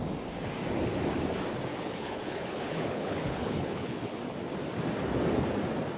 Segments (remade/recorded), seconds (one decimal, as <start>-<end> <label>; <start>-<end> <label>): 0.0-1.7 recorded; 1.7-4.2 remade; 4.2-6.0 recorded

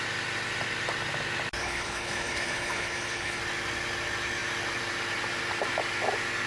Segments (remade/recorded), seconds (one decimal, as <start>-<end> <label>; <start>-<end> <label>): 0.0-1.6 recorded; 1.6-3.4 remade; 3.4-6.5 recorded

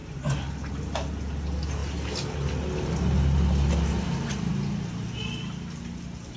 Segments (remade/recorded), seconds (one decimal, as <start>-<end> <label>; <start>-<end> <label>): 0.0-6.4 recorded

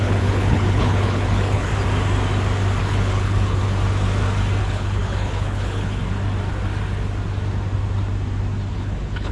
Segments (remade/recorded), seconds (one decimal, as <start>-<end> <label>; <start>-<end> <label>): 0.0-1.7 remade; 1.7-2.8 recorded; 2.8-3.6 remade; 3.6-4.6 recorded; 4.6-6.0 remade; 6.0-8.7 recorded; 8.7-9.3 remade

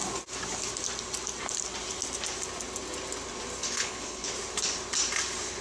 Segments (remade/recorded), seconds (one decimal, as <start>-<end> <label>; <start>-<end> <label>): 0.0-3.6 recorded; 3.6-4.3 remade; 4.3-5.6 recorded

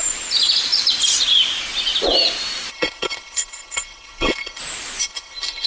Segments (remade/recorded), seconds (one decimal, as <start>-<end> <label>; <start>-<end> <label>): 0.0-2.7 recorded; 2.7-4.6 remade; 4.6-5.0 recorded; 5.0-5.7 remade